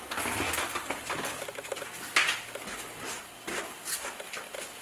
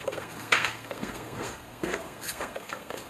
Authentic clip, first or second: first